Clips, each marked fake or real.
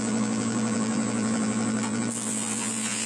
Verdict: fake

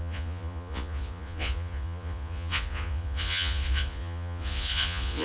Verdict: fake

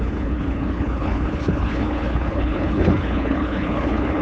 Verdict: fake